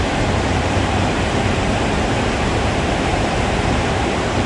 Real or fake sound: fake